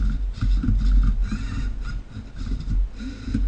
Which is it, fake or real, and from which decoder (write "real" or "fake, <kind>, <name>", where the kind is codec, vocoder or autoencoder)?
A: real